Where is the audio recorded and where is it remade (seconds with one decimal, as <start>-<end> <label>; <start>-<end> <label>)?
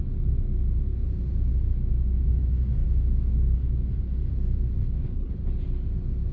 0.0-4.8 recorded; 4.8-5.4 remade; 5.4-6.3 recorded